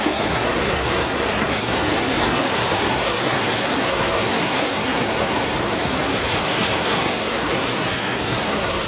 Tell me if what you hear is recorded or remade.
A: remade